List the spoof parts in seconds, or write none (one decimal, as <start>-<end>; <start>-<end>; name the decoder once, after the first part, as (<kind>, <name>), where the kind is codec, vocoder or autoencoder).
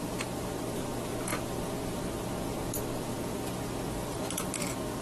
none